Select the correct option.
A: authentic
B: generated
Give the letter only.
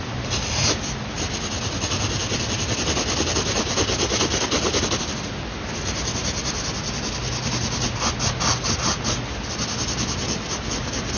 A